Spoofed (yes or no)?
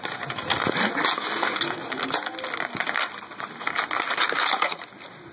no